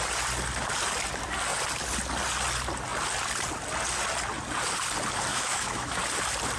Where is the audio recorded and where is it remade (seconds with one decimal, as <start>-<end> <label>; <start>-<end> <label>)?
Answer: 0.0-5.3 recorded; 5.3-6.0 remade; 6.0-6.6 recorded